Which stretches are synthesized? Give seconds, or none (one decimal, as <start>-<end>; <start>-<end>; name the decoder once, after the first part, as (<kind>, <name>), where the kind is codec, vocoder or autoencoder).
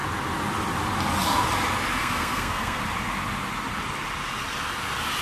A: 2.0-2.8 (codec, SNAC)